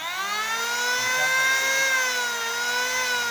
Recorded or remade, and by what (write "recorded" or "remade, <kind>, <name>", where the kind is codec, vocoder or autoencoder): recorded